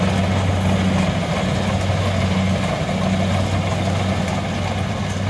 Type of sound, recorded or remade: recorded